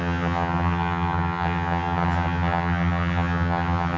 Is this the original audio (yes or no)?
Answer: no